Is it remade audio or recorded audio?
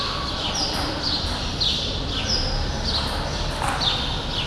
recorded